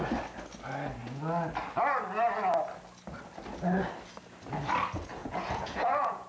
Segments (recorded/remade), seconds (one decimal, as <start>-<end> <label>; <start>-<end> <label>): 0.0-5.2 recorded; 5.2-6.3 remade